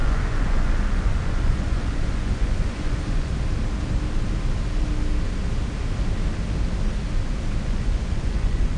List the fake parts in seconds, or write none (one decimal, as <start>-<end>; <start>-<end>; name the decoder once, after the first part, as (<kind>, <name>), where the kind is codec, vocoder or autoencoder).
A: 0.0-3.3 (vocoder, Vocos); 7.6-8.8